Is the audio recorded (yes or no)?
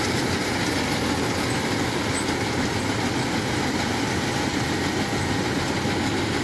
yes